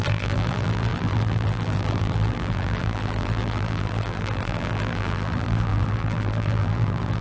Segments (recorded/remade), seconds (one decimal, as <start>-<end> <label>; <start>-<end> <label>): 0.0-7.2 remade